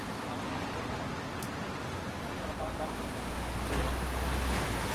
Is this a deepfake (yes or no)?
no